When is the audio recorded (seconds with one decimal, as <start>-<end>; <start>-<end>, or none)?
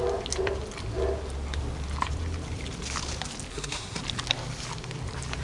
0.0-3.5; 4.0-5.4